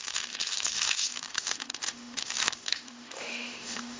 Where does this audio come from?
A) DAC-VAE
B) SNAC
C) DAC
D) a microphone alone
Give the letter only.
A